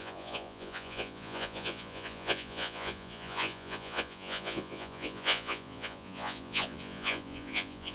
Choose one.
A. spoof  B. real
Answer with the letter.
A